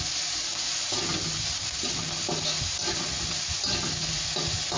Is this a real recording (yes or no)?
yes